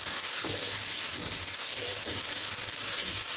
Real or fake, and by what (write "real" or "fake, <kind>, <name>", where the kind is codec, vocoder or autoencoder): fake, codec, DAC